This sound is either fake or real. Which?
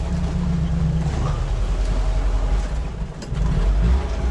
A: real